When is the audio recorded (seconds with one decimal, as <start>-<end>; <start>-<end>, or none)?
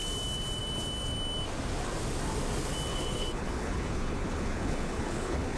0.0-2.9